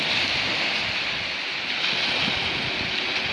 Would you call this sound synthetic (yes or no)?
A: no